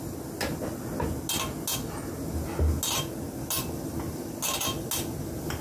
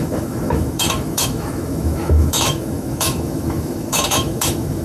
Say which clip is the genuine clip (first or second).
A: first